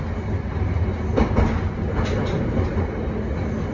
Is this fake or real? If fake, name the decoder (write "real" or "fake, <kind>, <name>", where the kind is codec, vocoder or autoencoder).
real